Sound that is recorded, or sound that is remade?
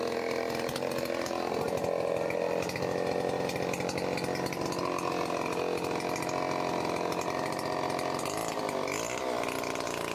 recorded